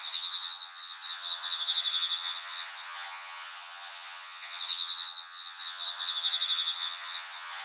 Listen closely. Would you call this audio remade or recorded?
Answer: remade